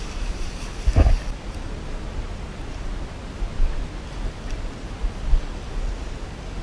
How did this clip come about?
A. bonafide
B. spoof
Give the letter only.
A